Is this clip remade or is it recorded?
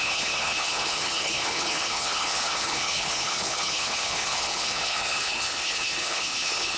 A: remade